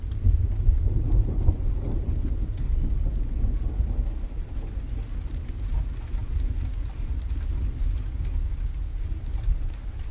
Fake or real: real